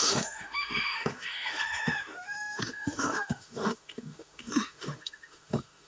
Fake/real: fake